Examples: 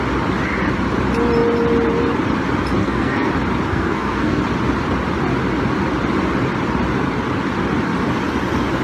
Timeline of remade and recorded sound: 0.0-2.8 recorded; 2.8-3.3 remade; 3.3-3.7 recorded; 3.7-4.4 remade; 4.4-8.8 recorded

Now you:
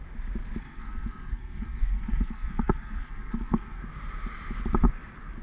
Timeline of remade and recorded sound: 0.0-0.6 recorded; 0.6-3.8 remade; 3.8-5.4 recorded

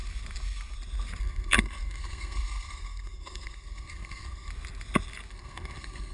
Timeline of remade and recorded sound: 0.0-1.2 recorded; 1.2-4.5 remade; 4.5-5.3 recorded; 5.3-6.1 remade

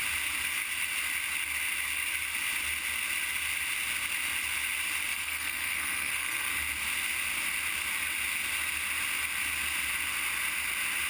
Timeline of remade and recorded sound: 0.0-5.1 recorded; 5.1-6.5 remade; 6.5-11.1 recorded

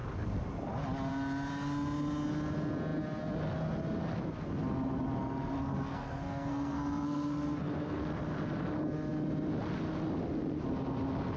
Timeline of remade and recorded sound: 0.0-5.2 recorded; 5.2-8.0 remade; 8.0-11.4 recorded

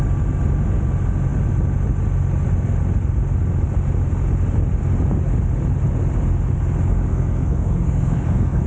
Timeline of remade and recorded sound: 0.0-6.9 recorded; 6.9-8.7 remade

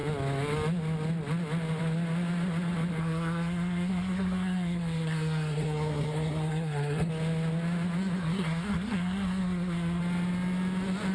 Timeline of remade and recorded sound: 0.0-3.0 recorded; 3.0-7.1 remade; 7.1-8.2 recorded; 8.2-10.0 remade; 10.0-11.1 recorded